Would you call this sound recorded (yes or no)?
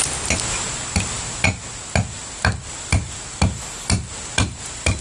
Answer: yes